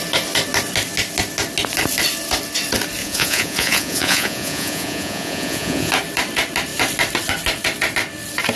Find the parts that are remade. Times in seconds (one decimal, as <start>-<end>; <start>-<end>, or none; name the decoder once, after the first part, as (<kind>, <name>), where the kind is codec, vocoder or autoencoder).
3.0-5.9 (vocoder, Vocos)